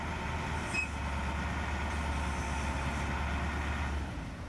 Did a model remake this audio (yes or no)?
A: no